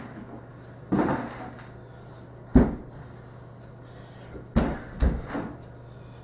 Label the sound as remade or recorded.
recorded